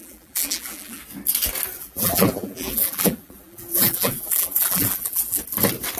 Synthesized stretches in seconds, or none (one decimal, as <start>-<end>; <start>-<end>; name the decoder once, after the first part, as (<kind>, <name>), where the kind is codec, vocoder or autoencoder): 0.0-1.0 (vocoder, BigVGAN v2); 1.8-5.4